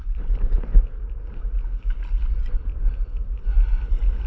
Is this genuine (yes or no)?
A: yes